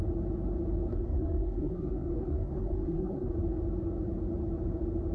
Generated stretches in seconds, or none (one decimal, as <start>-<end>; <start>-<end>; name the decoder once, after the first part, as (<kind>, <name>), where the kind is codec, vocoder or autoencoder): 0.9-3.3 (codec, SNAC)